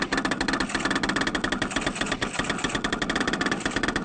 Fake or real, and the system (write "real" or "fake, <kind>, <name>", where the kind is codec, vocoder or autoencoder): real